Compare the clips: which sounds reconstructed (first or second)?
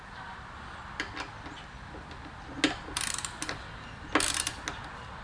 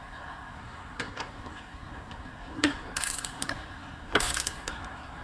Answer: second